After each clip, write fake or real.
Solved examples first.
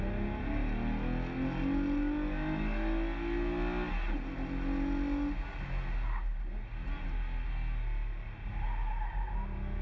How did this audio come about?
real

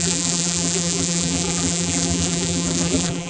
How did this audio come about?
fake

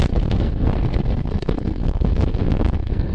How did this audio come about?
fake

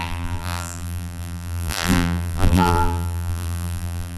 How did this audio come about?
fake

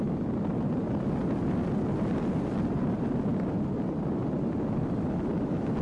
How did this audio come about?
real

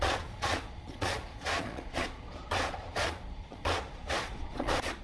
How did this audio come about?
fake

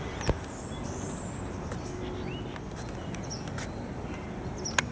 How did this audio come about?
real